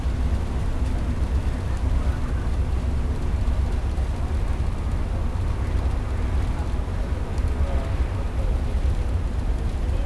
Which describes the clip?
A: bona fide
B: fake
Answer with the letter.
A